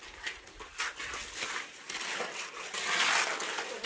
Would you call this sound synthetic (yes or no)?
no